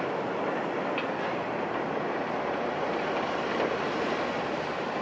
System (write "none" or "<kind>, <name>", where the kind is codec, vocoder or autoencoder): none